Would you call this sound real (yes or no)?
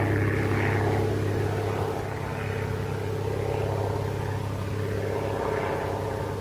yes